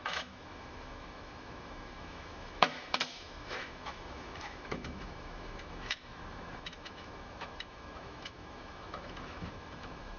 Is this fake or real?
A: fake